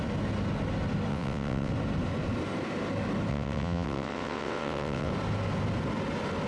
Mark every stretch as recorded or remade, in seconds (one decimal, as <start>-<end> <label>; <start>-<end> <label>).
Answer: 0.0-1.1 recorded; 1.1-1.7 remade; 1.7-3.3 recorded; 3.3-5.1 remade; 5.1-6.5 recorded